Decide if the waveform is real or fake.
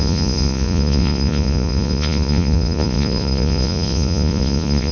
fake